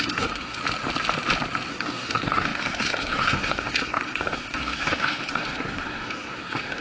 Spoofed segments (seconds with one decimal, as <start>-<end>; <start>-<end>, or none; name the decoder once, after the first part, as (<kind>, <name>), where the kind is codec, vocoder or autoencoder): 0.0-0.6 (codec, SNAC); 1.7-6.8